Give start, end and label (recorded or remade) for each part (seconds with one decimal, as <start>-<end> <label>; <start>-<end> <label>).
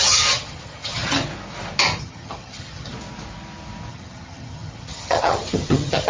0.0-1.3 remade; 1.3-2.0 recorded; 2.0-2.9 remade; 2.9-3.9 recorded; 3.9-6.1 remade